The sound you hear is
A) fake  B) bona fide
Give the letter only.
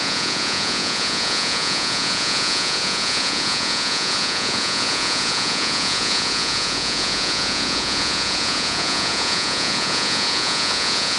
A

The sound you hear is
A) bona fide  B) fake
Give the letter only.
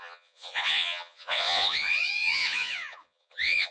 B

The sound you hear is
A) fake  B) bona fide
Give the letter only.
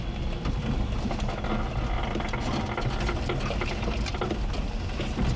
B